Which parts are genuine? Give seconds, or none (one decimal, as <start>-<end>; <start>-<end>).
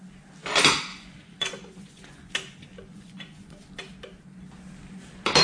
0.0-0.9; 2.3-2.9; 3.6-5.4